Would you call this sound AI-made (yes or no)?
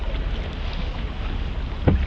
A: no